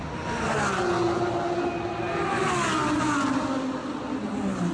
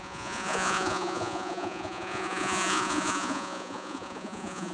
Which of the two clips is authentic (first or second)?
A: first